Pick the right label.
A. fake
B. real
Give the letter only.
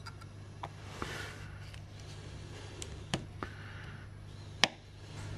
B